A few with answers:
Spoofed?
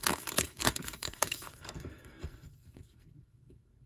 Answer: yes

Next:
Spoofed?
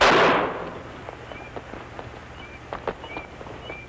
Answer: no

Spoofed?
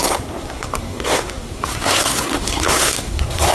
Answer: yes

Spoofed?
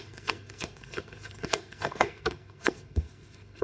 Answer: yes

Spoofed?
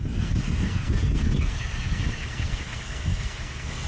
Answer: yes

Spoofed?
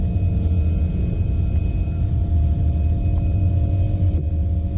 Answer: no